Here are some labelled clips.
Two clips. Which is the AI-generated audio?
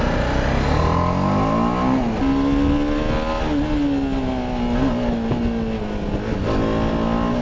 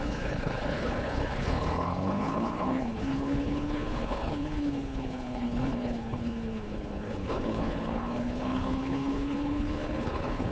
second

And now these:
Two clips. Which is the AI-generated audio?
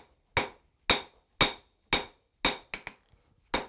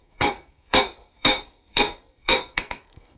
second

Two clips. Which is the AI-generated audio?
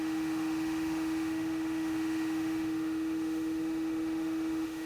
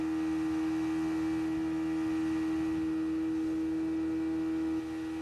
first